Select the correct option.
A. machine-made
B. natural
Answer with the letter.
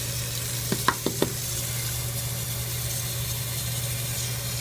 B